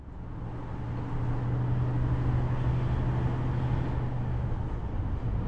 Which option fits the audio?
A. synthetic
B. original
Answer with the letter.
B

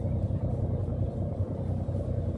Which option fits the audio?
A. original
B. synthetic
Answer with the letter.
A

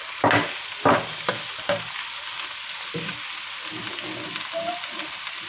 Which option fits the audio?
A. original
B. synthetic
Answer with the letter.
A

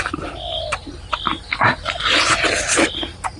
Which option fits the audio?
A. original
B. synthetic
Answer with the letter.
A